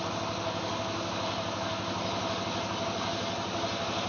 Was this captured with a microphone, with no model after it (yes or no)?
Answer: yes